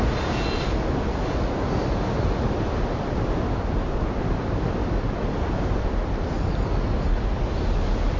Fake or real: real